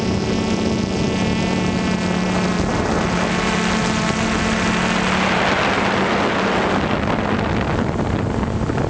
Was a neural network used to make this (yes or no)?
no